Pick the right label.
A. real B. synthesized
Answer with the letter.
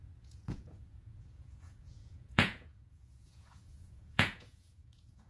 B